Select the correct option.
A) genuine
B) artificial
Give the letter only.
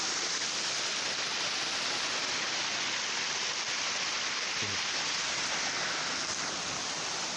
A